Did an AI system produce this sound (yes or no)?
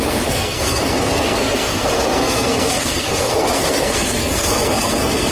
yes